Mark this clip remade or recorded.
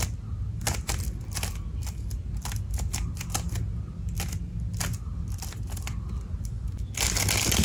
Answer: recorded